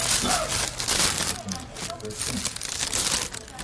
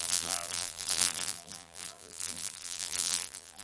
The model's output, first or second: second